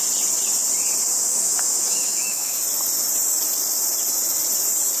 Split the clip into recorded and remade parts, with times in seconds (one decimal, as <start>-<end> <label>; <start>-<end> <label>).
0.0-1.3 recorded; 1.3-2.6 remade; 2.6-5.0 recorded